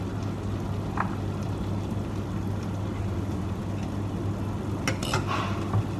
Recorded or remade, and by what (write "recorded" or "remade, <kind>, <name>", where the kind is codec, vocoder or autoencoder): recorded